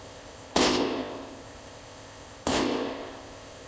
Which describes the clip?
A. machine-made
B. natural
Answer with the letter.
A